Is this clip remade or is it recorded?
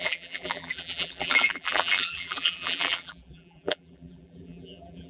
remade